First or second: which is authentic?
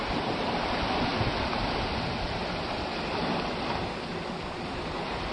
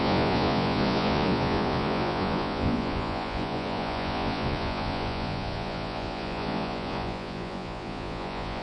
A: first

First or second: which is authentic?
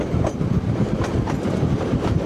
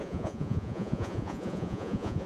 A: first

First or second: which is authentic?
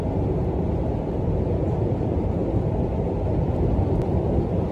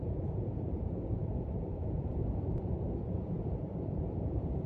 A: first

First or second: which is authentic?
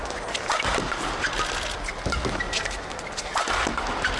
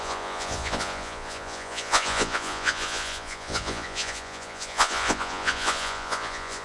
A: first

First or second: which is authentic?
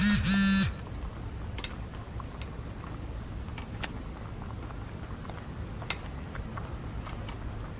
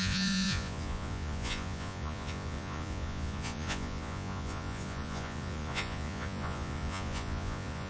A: first